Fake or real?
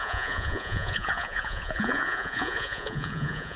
fake